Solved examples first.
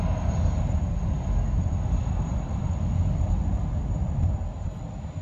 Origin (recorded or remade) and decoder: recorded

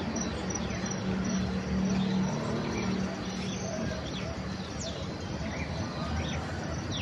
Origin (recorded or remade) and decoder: recorded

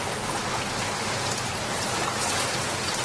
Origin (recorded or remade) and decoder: recorded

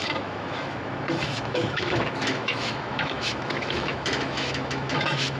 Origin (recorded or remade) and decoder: remade, autoencoder, DAC-VAE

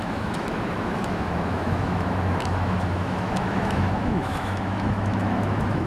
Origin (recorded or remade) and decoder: remade, autoencoder, DAC-VAE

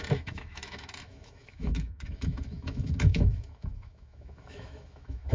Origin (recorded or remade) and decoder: remade, autoencoder, DAC-VAE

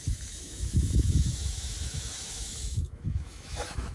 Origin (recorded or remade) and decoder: remade, autoencoder, DAC-VAE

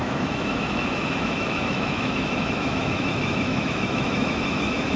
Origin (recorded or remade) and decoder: remade, autoencoder, DAC-VAE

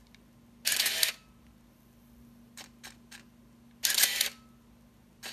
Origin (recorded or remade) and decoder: recorded